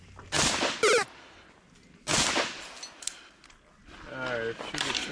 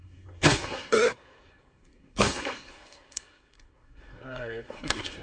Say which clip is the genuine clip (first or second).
first